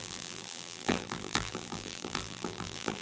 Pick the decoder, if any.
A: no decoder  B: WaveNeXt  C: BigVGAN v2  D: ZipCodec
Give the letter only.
C